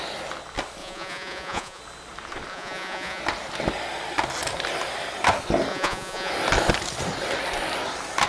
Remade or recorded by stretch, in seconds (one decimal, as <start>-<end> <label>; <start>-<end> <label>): 0.0-0.8 recorded; 0.8-1.8 remade; 1.8-2.5 recorded; 2.5-3.2 remade; 3.2-5.7 recorded; 5.7-6.3 remade; 6.3-8.3 recorded